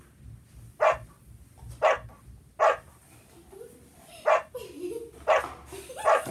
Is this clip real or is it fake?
real